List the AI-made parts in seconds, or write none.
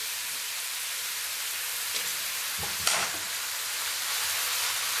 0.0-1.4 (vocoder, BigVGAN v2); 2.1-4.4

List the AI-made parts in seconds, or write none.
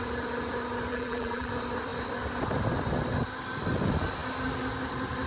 0.9-1.5 (vocoder, BigVGAN v2)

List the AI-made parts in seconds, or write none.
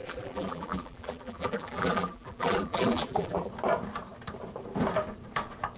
0.0-3.5 (vocoder, BigVGAN v2)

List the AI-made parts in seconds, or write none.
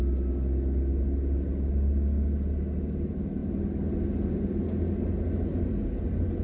none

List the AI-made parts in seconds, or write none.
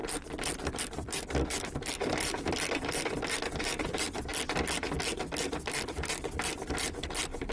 0.8-4.3 (vocoder, BigVGAN v2); 5.0-7.5